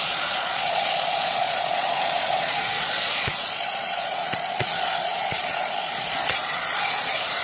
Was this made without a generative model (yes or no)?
no